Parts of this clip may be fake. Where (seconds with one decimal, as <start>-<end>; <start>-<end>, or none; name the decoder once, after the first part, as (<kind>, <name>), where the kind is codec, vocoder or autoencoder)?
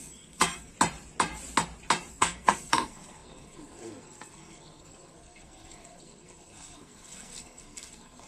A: 0.0-0.7 (codec, SNAC); 2.1-8.3